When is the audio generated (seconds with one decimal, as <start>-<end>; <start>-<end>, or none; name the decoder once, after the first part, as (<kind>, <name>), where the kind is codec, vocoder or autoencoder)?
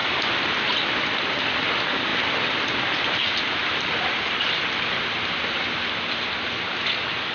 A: 0.0-0.7 (vocoder, BigVGAN v2); 2.1-6.0